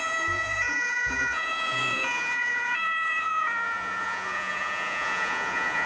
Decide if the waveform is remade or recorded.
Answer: remade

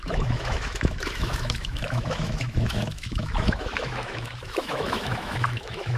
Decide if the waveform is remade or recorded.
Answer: remade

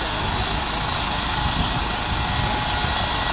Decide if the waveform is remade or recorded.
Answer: recorded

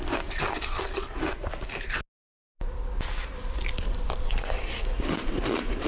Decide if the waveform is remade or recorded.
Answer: recorded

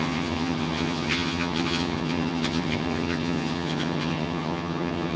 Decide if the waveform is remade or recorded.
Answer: remade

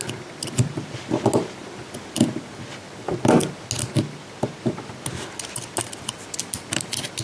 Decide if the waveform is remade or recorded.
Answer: recorded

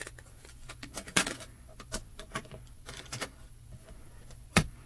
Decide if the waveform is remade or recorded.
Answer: remade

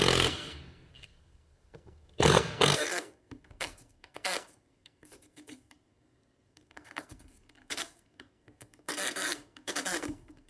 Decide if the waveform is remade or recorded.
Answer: remade